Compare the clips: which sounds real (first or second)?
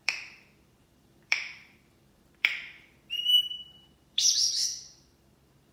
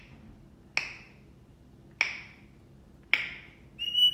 second